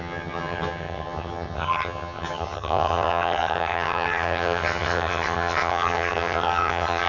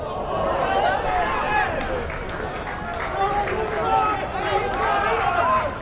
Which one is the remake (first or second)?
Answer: first